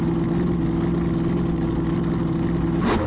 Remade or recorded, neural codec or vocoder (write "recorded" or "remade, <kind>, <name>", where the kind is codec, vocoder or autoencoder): recorded